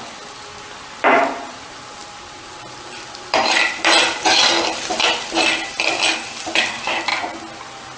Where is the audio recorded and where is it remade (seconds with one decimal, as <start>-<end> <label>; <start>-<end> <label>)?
0.0-7.1 remade; 7.1-8.0 recorded